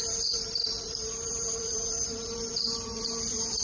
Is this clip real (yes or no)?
no